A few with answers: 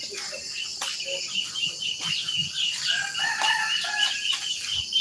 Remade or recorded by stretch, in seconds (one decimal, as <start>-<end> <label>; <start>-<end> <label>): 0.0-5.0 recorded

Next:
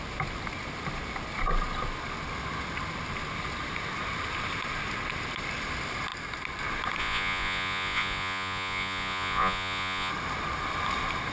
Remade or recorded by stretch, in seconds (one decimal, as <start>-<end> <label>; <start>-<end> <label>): 0.0-7.0 recorded; 7.0-10.1 remade; 10.1-11.3 recorded

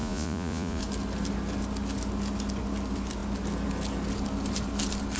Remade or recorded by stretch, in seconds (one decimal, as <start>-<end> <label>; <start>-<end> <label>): 0.0-0.8 remade; 0.8-5.2 recorded

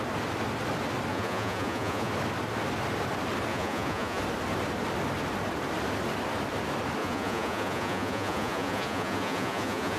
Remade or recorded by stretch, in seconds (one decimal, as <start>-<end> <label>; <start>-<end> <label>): 0.0-1.1 recorded; 1.1-2.1 remade; 2.1-3.5 recorded; 3.5-4.2 remade; 4.2-7.0 recorded; 7.0-10.0 remade